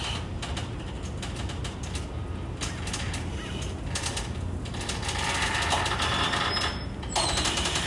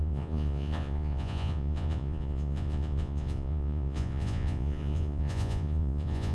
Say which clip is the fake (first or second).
second